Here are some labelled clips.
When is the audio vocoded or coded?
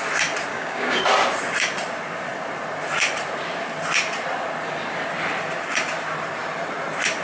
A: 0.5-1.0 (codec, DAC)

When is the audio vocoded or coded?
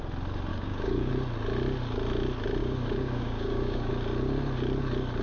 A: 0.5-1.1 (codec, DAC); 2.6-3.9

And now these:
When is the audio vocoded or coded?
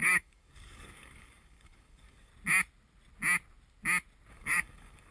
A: 0.0-2.3 (codec, DAC); 4.3-5.1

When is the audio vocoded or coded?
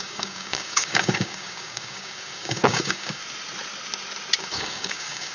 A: 0.0-3.2 (codec, DAC); 4.4-5.3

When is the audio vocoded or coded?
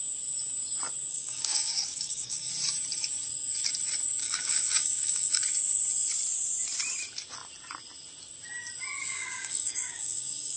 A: 1.1-2.5 (codec, DAC); 4.2-5.4; 9.0-10.6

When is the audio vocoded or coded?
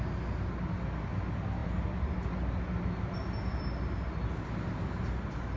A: none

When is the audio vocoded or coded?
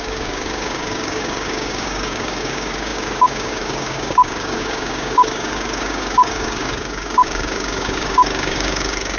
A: 0.0-9.2 (codec, DAC)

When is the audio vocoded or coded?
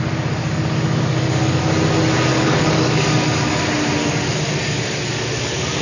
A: 0.4-1.6 (codec, DAC); 2.3-3.6